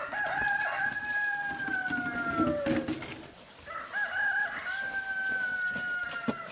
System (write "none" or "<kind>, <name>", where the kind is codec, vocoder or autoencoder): none